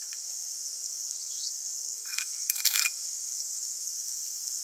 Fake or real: fake